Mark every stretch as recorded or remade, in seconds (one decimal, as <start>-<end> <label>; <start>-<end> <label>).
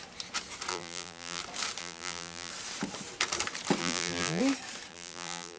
0.0-0.7 recorded; 0.7-1.4 remade; 1.4-1.8 recorded; 1.8-2.5 remade; 2.5-3.8 recorded; 3.8-4.4 remade; 4.4-4.9 recorded; 4.9-5.6 remade